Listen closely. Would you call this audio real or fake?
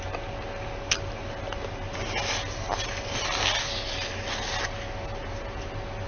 real